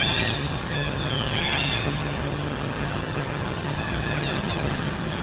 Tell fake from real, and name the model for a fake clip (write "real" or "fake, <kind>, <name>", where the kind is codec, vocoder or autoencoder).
fake, vocoder, HiFi-GAN